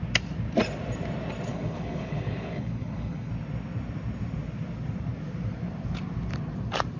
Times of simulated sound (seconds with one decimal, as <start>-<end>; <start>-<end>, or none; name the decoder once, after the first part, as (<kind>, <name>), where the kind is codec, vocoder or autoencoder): 1.5-3.3 (codec, HILCodec)